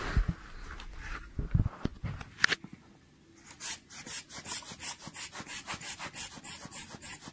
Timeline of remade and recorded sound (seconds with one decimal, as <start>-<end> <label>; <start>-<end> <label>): 0.0-7.3 recorded